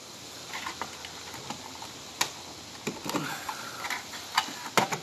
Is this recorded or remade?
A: recorded